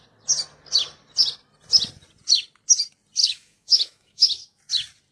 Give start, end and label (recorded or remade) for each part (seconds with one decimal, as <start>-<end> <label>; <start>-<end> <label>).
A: 0.0-3.2 recorded; 3.2-4.6 remade; 4.6-5.1 recorded